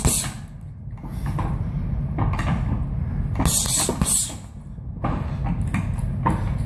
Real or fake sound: real